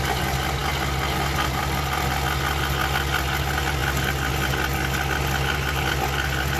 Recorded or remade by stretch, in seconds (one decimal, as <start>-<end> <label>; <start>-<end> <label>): 0.0-6.6 recorded